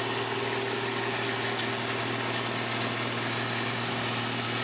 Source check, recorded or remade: recorded